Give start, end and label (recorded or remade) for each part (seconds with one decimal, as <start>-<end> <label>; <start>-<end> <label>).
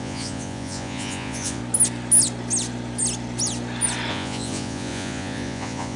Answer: 0.0-1.6 remade; 1.6-4.1 recorded; 4.1-6.0 remade